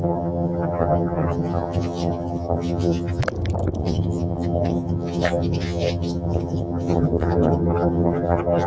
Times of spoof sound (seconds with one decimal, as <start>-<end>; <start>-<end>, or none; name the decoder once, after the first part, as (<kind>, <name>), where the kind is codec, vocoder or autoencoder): 0.0-3.2 (vocoder, HiFi-GAN); 3.8-8.7

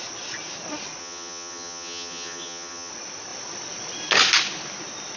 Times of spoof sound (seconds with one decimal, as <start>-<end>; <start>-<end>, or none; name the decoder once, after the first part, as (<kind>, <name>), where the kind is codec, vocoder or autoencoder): 1.0-2.9 (vocoder, HiFi-GAN)